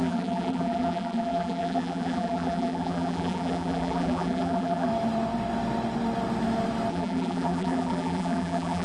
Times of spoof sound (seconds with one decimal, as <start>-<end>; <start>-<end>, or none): 0.0-4.9; 6.9-8.8